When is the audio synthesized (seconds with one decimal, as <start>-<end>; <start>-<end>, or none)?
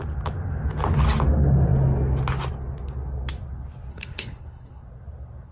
3.9-4.8